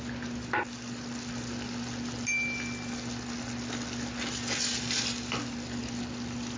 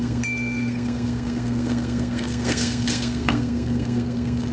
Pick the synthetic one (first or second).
second